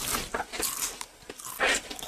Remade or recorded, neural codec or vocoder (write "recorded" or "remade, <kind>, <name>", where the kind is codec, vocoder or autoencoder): recorded